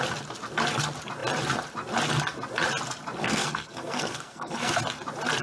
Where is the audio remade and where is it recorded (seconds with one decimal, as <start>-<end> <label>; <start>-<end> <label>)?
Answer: 0.0-3.2 recorded; 3.2-4.8 remade; 4.8-5.4 recorded